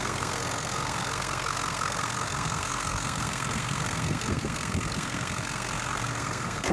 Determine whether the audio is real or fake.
fake